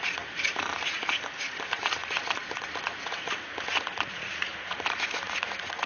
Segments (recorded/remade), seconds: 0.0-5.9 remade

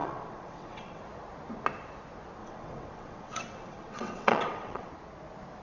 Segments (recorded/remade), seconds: 0.0-1.0 remade; 1.0-2.4 recorded; 2.4-4.9 remade; 4.9-5.6 recorded

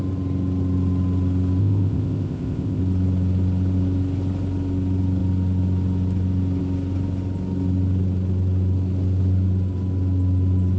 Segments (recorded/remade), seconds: 0.0-1.6 recorded; 1.6-2.8 remade; 2.8-10.8 recorded